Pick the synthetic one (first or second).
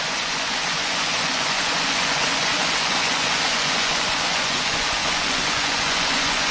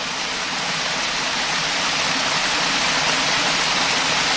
first